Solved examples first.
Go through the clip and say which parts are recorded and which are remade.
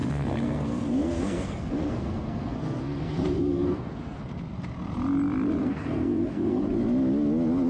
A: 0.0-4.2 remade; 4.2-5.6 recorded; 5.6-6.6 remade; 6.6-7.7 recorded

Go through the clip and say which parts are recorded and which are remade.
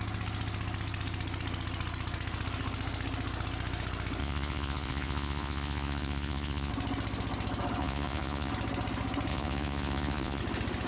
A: 0.0-4.2 recorded; 4.2-6.7 remade; 6.7-7.8 recorded; 7.8-8.5 remade; 8.5-9.3 recorded; 9.3-10.4 remade; 10.4-10.9 recorded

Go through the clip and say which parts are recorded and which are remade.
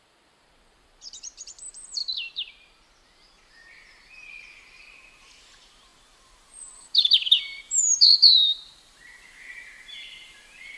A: 0.0-10.8 remade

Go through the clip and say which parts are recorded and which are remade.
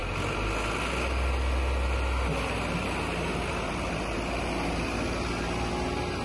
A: 0.0-6.2 recorded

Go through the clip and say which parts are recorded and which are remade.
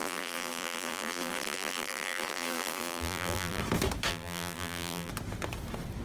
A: 0.0-3.6 remade; 3.6-4.1 recorded; 4.1-5.1 remade; 5.1-6.0 recorded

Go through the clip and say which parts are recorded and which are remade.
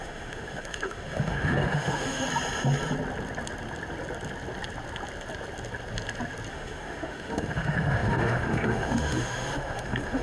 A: 0.0-2.3 remade; 2.3-6.5 recorded; 6.5-10.2 remade